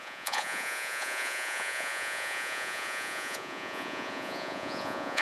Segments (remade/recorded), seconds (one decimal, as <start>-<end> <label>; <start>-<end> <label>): 0.0-5.2 remade